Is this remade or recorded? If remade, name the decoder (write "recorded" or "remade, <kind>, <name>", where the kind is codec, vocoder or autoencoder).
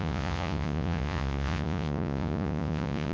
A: remade, vocoder, Vocos